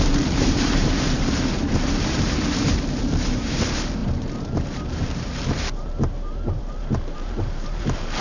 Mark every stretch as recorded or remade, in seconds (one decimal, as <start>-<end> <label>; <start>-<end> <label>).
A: 0.0-8.2 remade